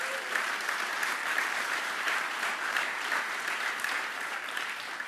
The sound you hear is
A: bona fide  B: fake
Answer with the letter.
B